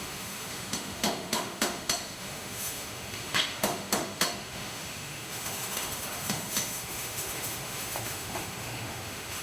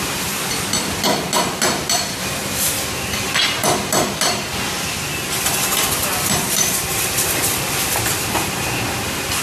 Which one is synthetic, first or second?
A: first